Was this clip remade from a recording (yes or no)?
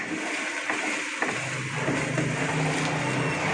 no